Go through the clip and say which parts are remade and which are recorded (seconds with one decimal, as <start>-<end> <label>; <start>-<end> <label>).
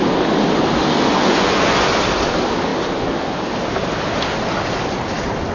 0.0-1.1 recorded; 1.1-1.9 remade; 1.9-5.5 recorded